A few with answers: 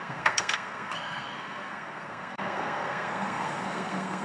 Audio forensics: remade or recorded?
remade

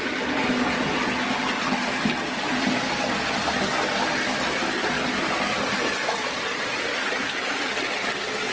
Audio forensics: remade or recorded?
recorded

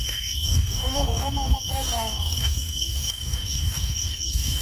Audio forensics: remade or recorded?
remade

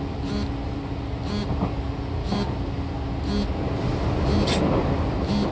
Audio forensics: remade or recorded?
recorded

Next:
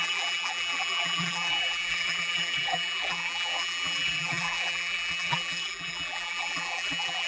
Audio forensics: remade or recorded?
remade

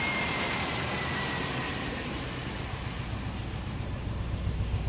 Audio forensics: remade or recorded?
remade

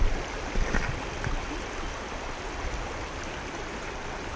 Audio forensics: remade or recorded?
recorded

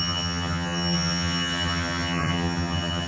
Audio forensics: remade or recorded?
remade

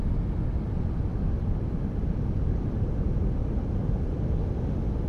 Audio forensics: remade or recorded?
recorded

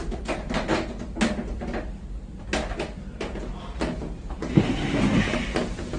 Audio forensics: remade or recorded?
recorded